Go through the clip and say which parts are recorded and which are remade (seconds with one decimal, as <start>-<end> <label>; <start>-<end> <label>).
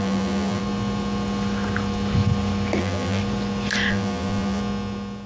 0.0-0.6 remade; 0.6-2.8 recorded; 2.8-3.2 remade; 3.2-3.9 recorded; 3.9-4.6 remade; 4.6-5.3 recorded